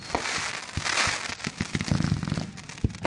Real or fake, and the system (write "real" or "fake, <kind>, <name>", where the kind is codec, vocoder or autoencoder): real